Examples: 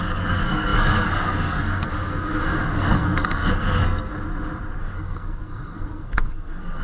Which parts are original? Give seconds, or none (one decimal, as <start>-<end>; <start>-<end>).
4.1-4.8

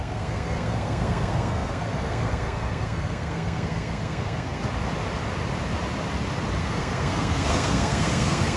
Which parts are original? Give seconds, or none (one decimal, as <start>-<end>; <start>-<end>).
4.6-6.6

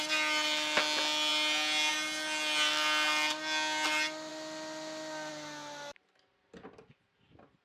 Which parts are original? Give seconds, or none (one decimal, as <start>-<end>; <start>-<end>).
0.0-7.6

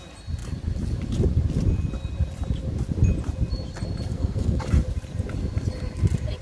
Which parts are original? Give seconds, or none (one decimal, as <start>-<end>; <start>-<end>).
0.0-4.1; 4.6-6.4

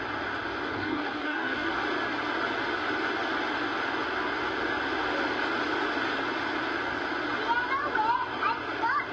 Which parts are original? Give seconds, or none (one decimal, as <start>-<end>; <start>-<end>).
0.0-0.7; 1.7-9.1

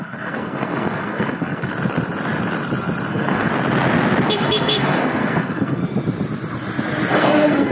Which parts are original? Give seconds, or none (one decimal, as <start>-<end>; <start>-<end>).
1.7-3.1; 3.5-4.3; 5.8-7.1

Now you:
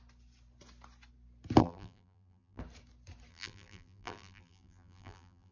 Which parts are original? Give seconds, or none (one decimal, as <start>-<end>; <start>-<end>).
0.0-1.6; 2.6-3.3